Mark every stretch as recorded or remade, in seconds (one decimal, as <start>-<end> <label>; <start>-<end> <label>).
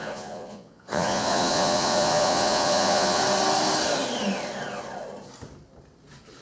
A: 0.0-3.2 remade; 3.2-6.4 recorded